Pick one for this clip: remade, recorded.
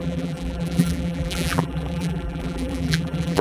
remade